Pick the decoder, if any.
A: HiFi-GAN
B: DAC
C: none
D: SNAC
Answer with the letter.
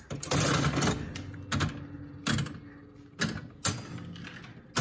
C